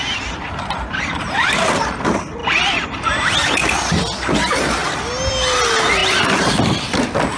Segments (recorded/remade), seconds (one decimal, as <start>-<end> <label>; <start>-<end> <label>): 0.0-6.0 recorded; 6.0-6.8 remade; 6.8-7.4 recorded